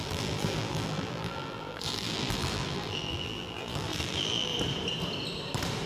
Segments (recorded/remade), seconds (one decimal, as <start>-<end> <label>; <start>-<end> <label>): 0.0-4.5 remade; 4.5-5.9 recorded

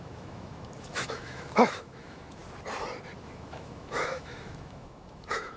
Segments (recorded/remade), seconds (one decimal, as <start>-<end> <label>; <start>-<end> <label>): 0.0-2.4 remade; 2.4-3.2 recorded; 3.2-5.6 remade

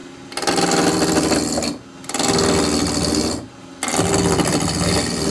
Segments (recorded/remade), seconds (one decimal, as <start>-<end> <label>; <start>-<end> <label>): 0.0-5.3 recorded